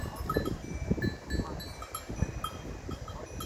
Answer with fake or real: real